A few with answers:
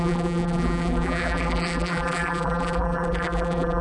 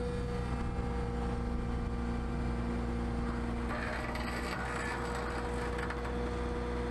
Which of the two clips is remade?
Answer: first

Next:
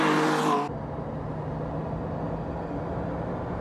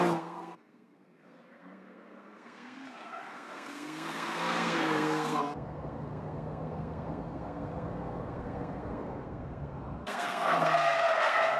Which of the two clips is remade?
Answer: second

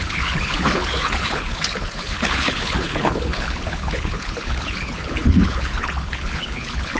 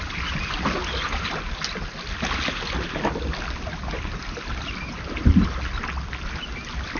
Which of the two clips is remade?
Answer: first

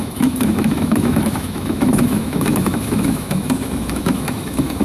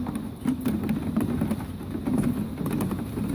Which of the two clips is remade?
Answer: first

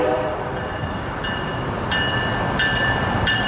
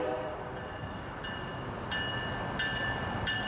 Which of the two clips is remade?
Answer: first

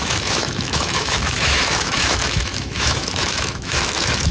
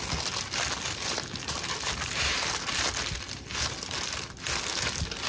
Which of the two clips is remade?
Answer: first